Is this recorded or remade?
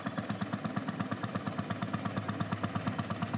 recorded